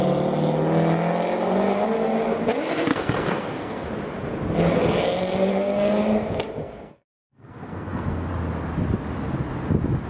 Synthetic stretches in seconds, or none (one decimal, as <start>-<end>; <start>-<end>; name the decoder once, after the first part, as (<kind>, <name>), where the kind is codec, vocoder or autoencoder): 2.9-3.9 (codec, SNAC); 5.5-6.0; 6.6-8.3

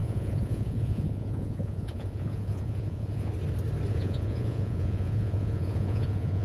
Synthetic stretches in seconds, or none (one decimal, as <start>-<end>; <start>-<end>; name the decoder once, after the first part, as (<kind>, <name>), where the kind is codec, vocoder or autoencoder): 0.0-3.3 (vocoder, Vocos); 3.9-6.4

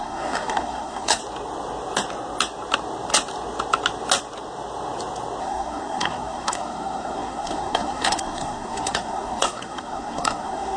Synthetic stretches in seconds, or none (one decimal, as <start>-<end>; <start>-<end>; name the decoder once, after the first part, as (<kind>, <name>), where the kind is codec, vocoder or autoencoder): 0.0-1.2 (codec, SNAC); 5.4-10.8

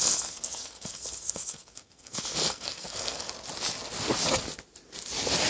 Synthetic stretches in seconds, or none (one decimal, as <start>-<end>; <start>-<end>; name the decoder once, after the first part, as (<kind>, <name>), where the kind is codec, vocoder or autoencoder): 0.0-3.3 (codec, SNAC)

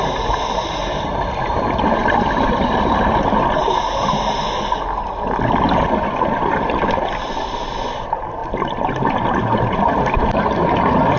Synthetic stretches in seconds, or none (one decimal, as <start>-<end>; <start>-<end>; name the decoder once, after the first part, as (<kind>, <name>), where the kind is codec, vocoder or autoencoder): none

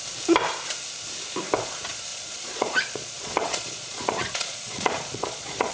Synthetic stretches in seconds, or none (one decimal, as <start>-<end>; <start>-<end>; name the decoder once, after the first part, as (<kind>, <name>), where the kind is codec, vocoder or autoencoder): 2.1-5.7 (vocoder, Vocos)

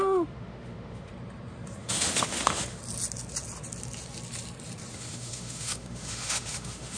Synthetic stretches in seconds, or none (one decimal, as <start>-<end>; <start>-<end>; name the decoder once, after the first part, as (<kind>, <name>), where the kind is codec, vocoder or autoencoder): 0.0-1.1 (autoencoder, DAC-VAE); 1.8-2.8; 4.9-7.0